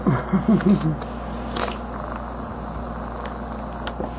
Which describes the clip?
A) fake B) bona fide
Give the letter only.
B